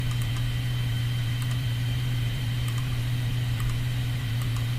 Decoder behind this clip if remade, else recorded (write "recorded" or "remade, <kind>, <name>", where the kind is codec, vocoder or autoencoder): remade, vocoder, BigVGAN v2